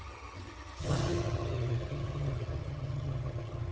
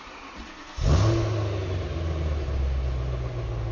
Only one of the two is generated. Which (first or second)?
first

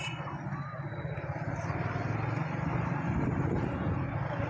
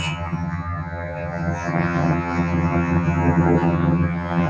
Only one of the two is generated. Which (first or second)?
second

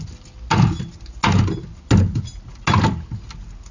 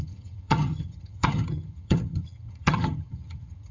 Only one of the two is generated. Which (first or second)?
second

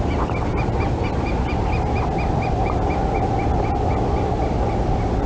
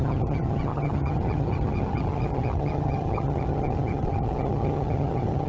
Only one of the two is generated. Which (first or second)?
second